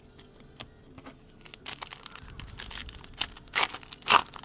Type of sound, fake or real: real